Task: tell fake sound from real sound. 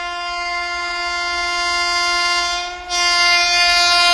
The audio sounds real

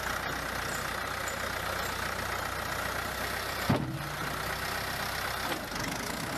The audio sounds real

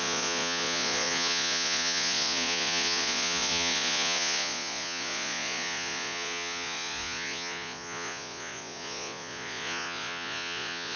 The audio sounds fake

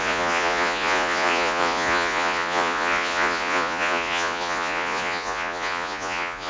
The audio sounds fake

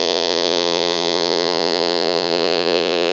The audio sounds fake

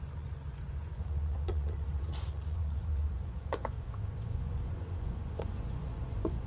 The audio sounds fake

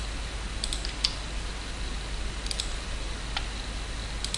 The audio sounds real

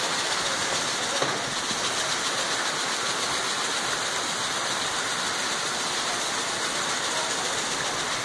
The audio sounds real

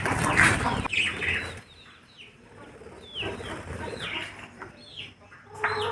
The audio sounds real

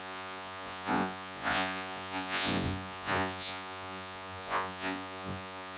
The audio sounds fake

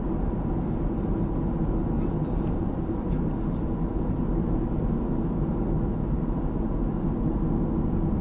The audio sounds real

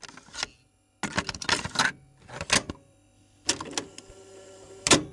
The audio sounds real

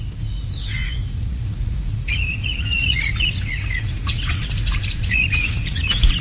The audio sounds fake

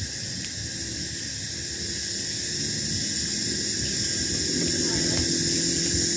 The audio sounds real